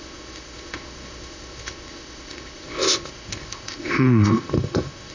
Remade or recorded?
remade